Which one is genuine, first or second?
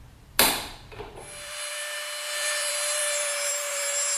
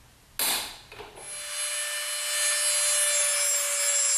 second